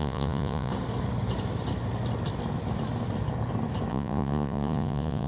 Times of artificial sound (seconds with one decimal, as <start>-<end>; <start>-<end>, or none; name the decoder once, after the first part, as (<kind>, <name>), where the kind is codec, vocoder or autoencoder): 0.0-0.7 (vocoder, Vocos); 3.9-5.3

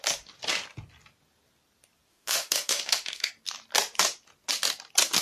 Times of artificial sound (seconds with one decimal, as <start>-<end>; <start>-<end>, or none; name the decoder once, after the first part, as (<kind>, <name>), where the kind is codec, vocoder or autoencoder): 2.1-3.3 (autoencoder, DAC-VAE)

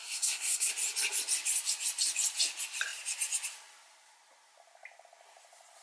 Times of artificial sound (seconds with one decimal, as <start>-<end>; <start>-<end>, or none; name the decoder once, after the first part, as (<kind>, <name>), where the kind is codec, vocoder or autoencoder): 0.0-0.7 (codec, SNAC)

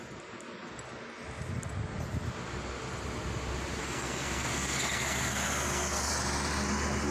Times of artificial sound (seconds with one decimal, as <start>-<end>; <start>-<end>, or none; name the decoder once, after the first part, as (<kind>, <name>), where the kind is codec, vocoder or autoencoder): 3.8-6.1 (codec, SNAC)

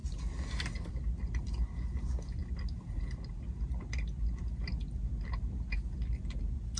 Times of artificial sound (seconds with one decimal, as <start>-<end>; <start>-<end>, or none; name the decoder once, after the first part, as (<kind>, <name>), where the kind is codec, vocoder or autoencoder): none